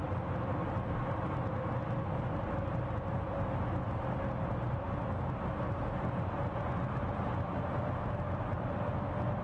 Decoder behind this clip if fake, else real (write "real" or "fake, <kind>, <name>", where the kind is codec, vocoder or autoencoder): real